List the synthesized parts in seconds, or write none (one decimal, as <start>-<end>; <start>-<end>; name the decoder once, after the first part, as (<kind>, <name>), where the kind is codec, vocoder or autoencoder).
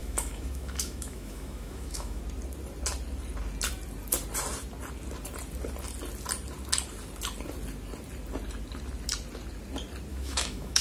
0.0-2.2 (autoencoder, DAC-VAE); 10.1-10.8